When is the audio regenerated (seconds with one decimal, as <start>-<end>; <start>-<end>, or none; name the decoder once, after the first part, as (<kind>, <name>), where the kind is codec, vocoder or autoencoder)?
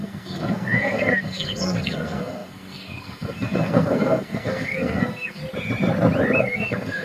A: 0.0-5.4 (codec, SNAC); 6.4-7.0